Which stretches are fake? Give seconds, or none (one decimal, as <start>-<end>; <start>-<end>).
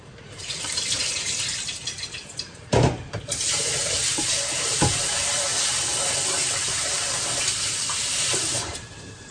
0.0-5.5; 7.0-9.3